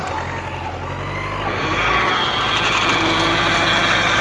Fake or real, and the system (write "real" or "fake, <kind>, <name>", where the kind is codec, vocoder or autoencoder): real